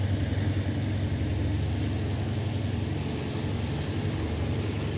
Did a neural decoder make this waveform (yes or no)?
no